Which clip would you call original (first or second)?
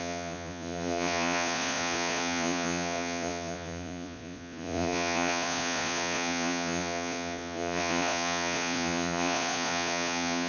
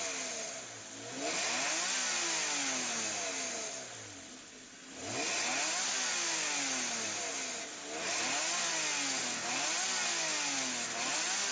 second